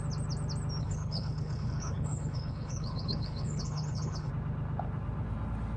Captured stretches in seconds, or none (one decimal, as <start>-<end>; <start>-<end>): 0.0-0.8; 4.3-5.8